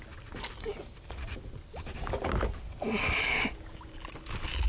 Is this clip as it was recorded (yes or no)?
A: yes